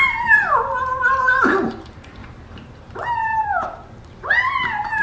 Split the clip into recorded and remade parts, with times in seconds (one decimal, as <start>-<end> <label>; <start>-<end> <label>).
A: 0.0-5.0 remade